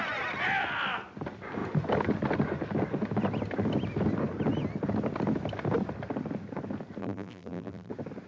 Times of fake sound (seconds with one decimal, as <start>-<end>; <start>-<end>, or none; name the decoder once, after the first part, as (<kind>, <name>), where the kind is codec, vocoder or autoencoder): 7.0-7.9 (vocoder, BigVGAN v2)